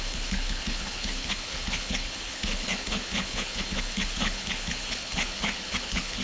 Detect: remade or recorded remade